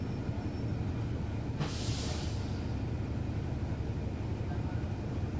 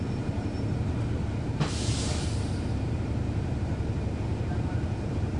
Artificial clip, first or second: second